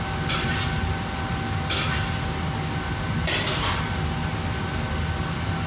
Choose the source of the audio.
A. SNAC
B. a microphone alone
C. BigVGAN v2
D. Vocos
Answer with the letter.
B